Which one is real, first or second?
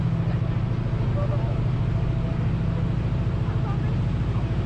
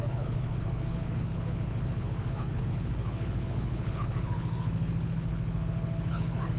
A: first